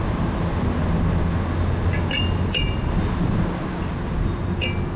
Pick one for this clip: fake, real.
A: real